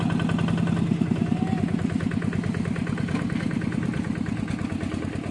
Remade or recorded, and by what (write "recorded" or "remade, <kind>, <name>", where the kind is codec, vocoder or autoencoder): recorded